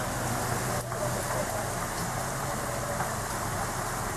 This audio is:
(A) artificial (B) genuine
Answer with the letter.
B